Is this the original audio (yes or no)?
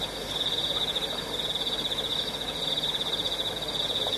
yes